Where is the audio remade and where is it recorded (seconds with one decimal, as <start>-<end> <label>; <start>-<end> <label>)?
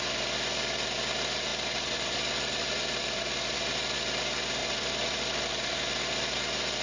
0.0-1.5 recorded; 1.5-3.2 remade; 3.2-4.6 recorded; 4.6-5.7 remade; 5.7-6.8 recorded